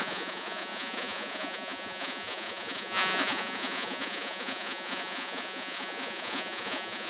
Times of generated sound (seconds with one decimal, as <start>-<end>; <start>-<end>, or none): 0.0-7.1